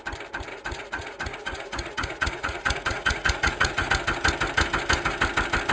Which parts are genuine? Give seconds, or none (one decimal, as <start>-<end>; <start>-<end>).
0.0-0.5; 3.9-5.7